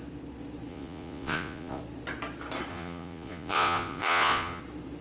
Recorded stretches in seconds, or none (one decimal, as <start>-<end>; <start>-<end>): 0.0-0.7; 1.8-2.7; 4.6-5.0